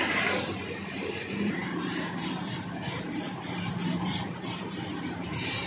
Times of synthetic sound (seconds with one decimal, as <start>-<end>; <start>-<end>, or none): 0.0-5.7

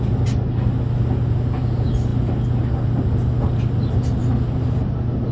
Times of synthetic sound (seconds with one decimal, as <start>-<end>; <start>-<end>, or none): none

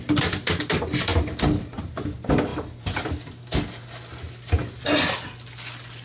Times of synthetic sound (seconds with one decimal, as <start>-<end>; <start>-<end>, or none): 1.1-1.8; 2.5-3.8

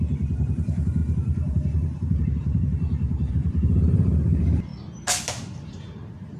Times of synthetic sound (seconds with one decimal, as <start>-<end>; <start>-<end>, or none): 0.0-4.7; 5.7-6.4

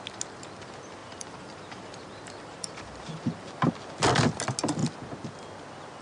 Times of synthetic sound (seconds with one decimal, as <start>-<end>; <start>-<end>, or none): 1.0-3.7